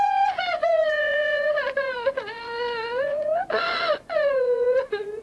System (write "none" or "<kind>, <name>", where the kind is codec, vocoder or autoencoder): vocoder, Vocos